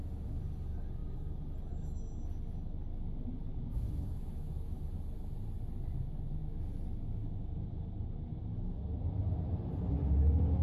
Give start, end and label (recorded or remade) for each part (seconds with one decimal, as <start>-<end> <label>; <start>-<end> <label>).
0.0-3.5 recorded; 3.5-4.9 remade; 4.9-10.6 recorded

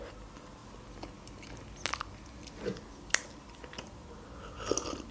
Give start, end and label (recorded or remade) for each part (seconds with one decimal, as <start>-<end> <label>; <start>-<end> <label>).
0.0-5.1 recorded

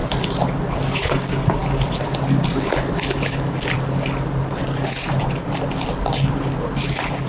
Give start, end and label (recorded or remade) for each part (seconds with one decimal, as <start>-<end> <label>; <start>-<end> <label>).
0.0-7.3 recorded